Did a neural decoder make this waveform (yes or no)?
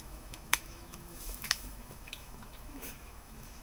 yes